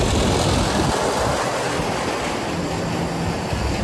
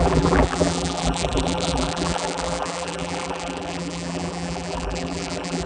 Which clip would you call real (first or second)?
first